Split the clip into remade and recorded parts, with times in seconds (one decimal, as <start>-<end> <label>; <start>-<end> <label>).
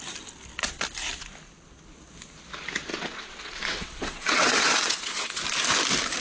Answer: 0.0-2.9 recorded; 2.9-5.4 remade; 5.4-6.2 recorded